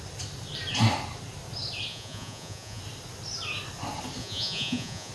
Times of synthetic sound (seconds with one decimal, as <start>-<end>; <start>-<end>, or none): 1.9-2.8; 4.2-5.1